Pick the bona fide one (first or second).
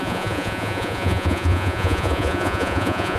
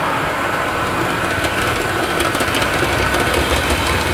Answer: second